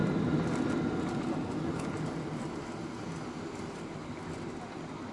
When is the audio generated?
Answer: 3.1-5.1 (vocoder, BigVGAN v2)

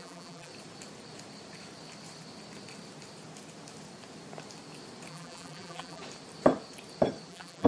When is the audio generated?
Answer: 0.0-0.5 (vocoder, BigVGAN v2); 5.1-6.0; 7.3-7.7

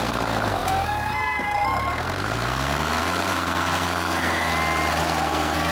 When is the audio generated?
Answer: 0.0-4.5 (codec, SNAC); 5.0-5.7

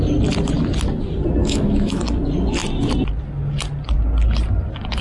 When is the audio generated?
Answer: 1.4-2.0 (autoencoder, DAC-VAE)

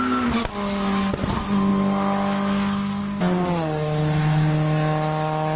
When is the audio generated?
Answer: none

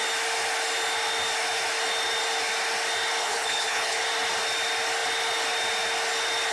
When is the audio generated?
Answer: 3.2-4.0 (codec, HILCodec)